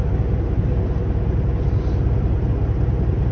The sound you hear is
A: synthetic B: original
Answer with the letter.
B